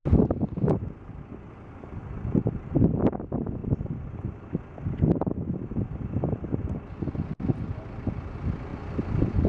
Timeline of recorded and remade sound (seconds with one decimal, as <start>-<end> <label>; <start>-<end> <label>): 0.0-9.5 recorded